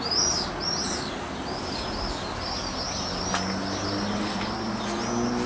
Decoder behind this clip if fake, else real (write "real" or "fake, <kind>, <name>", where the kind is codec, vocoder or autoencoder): real